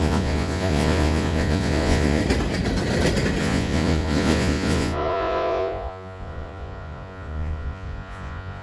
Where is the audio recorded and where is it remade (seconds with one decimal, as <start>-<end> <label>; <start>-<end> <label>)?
0.0-2.2 remade; 2.2-3.4 recorded; 3.4-8.6 remade